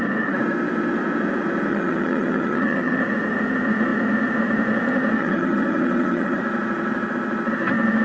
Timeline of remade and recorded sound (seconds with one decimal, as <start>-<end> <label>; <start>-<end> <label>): 0.0-1.7 recorded; 1.7-3.0 remade; 3.0-5.2 recorded; 5.2-6.4 remade; 6.4-8.0 recorded